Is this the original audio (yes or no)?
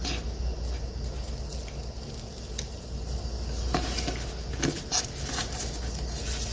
yes